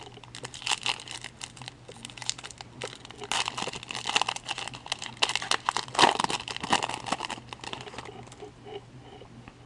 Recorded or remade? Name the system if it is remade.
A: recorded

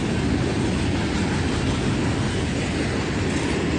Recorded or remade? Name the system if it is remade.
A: recorded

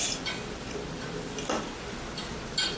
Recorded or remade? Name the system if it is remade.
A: recorded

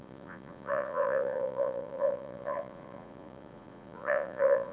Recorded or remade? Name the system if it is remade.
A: remade, vocoder, Vocos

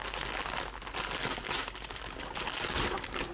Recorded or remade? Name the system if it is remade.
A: recorded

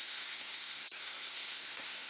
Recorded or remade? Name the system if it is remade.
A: remade, codec, SNAC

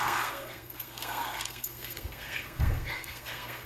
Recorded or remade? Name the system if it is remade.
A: remade, codec, SNAC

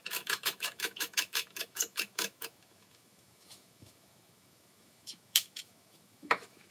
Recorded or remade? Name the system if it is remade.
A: remade, autoencoder, DAC-VAE